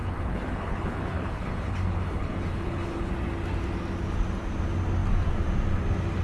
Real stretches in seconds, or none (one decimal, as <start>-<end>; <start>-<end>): 3.1-6.2